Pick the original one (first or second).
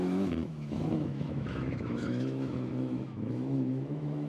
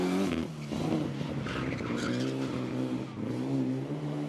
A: second